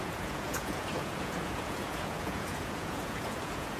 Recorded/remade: remade